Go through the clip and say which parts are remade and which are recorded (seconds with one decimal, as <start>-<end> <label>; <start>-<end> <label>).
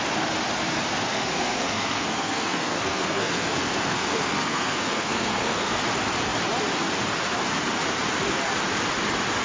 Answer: 0.0-1.1 recorded; 1.1-5.8 remade; 5.8-9.4 recorded